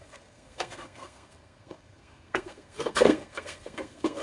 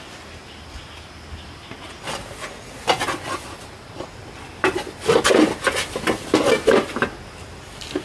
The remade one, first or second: first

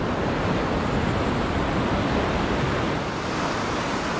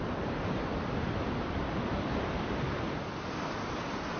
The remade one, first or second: second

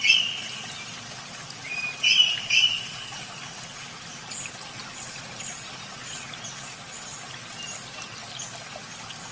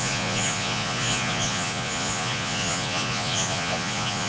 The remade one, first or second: second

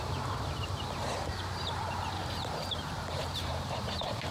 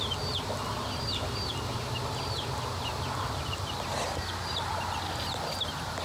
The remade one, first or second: first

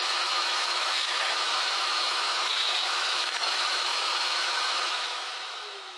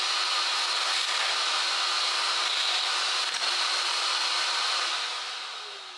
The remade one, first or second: first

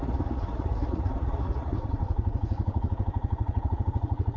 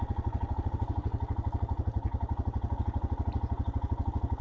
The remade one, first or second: first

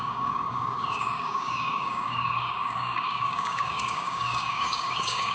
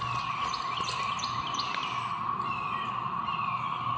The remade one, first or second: first